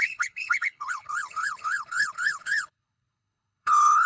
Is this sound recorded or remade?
remade